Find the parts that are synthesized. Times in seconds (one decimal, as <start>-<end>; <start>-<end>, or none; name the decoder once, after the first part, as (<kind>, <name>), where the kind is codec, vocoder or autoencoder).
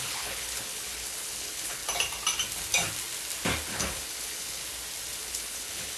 0.0-1.8 (codec, HILCodec); 3.7-4.6; 5.2-6.0